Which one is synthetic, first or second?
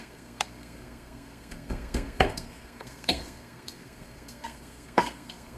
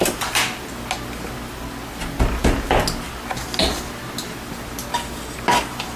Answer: first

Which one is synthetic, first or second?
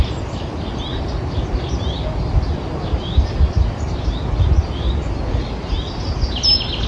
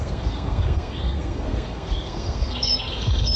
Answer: second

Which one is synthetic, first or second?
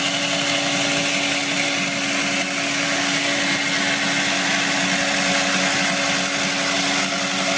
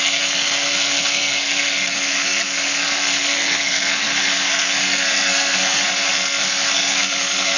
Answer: second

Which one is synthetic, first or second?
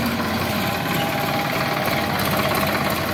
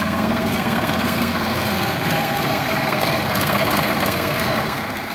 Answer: second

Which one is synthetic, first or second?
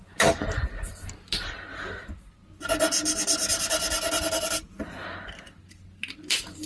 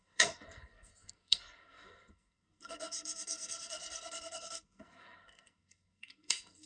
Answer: second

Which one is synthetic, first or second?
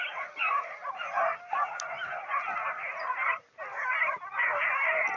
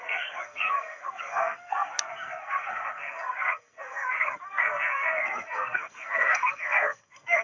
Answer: second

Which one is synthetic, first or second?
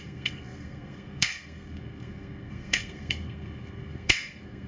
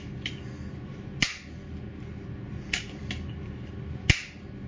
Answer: first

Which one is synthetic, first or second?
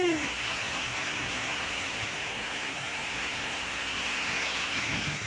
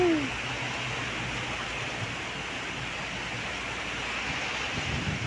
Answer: first